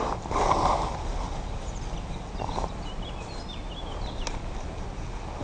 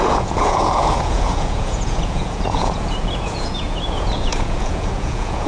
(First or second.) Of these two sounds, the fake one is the second